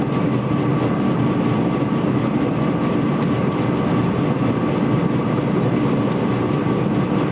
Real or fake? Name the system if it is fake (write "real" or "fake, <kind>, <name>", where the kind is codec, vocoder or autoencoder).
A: real